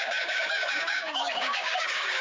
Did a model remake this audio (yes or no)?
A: yes